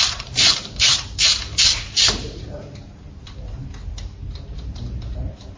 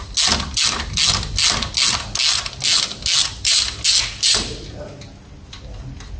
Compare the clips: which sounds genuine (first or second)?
second